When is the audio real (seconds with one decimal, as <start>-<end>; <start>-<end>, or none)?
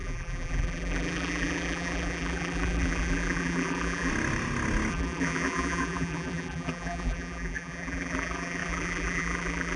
4.1-4.9